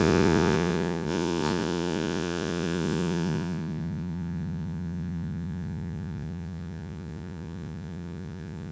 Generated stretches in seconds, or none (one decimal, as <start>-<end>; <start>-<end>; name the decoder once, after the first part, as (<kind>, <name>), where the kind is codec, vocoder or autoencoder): 0.0-8.7 (vocoder, Vocos)